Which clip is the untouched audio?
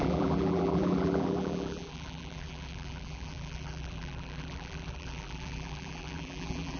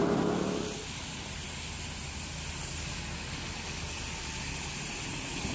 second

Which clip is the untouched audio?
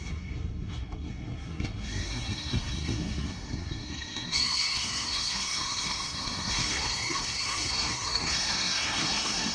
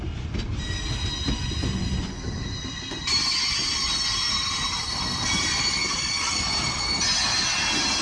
second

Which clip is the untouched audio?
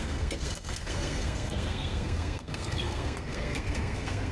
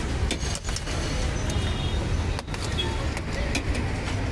second